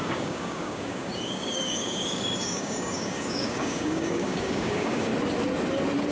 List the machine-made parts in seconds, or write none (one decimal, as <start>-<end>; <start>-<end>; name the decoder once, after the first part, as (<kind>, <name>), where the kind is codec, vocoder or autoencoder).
0.0-5.1 (codec, DAC)